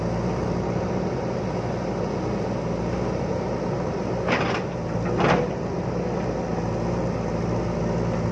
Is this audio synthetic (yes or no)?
no